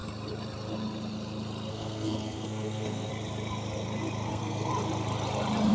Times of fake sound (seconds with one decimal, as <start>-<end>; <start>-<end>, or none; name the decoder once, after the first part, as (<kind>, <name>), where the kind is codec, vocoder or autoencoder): 1.7-3.1 (codec, SNAC); 4.3-4.7